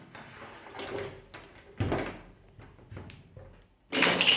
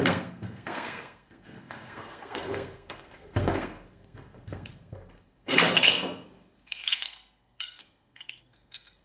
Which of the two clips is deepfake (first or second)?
second